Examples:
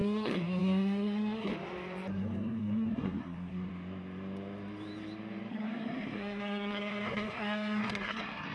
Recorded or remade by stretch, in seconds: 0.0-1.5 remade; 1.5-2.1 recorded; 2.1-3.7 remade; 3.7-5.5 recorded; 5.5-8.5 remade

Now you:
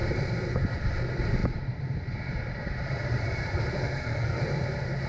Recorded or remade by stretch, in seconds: 0.0-3.8 recorded; 3.8-4.4 remade; 4.4-5.1 recorded

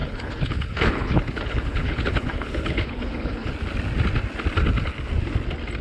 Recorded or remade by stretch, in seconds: 0.0-3.5 remade; 3.5-5.8 recorded